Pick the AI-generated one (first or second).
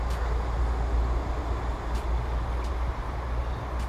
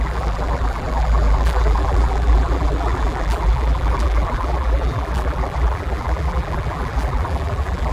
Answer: second